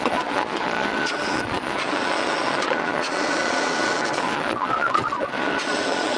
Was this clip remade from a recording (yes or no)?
yes